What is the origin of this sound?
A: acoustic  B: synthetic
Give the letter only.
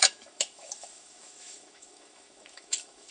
B